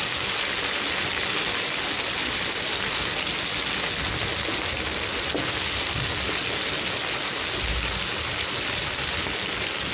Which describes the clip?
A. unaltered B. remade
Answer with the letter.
A